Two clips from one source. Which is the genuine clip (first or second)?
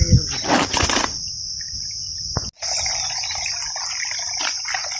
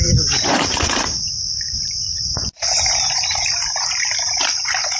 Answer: first